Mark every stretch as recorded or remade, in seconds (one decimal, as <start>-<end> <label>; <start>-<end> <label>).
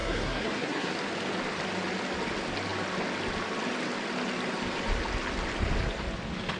0.0-0.9 remade; 0.9-6.6 recorded